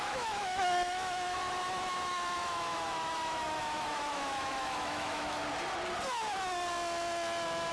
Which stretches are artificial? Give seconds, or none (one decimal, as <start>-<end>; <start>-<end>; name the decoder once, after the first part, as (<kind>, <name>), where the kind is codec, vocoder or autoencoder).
0.0-5.4 (autoencoder, DAC-VAE)

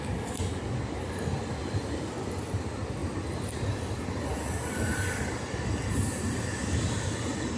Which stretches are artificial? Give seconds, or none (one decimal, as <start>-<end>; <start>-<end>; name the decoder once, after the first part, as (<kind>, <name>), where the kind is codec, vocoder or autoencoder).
none

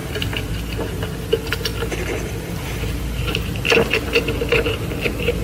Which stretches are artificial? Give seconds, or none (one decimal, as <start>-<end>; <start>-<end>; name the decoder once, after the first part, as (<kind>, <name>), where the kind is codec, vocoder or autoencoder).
none

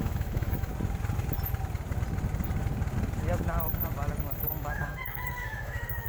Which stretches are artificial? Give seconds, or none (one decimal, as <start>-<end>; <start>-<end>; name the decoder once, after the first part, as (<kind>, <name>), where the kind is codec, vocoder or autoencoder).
0.0-0.7 (autoencoder, DAC-VAE); 4.4-6.1

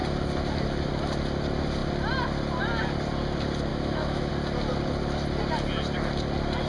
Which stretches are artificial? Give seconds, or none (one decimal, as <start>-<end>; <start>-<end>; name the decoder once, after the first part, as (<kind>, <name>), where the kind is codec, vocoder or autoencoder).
3.7-4.3 (autoencoder, DAC-VAE)